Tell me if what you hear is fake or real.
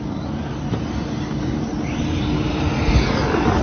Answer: real